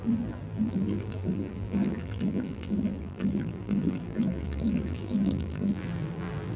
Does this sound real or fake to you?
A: fake